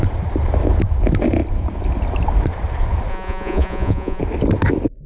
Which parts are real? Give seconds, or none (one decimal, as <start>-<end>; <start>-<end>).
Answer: 0.0-3.1; 4.2-5.1